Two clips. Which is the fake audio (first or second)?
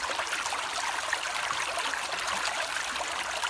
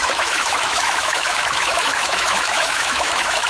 second